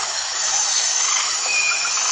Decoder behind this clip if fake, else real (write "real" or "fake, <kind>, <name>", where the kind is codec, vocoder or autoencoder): fake, autoencoder, DAC-VAE